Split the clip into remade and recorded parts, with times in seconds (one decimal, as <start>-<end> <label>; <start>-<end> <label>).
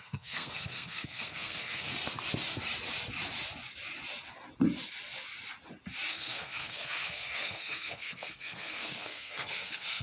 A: 0.0-1.9 remade; 1.9-6.1 recorded; 6.1-10.0 remade